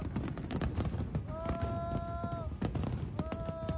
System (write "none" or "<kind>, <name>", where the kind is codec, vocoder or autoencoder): none